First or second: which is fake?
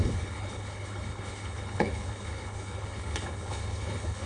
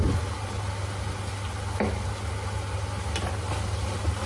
first